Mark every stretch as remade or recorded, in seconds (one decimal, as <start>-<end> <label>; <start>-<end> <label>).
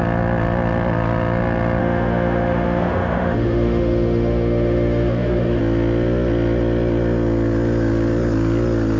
0.0-1.8 recorded; 1.8-5.6 remade; 5.6-9.0 recorded